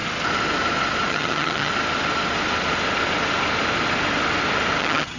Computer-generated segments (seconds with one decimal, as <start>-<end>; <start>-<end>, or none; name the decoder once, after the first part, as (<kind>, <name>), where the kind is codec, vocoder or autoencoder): 1.1-1.7 (vocoder, HiFi-GAN); 4.8-5.2